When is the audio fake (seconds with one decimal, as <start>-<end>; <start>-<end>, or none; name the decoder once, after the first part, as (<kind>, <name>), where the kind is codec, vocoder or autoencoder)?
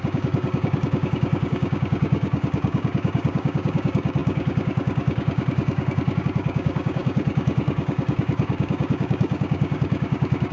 0.0-10.5 (codec, DAC)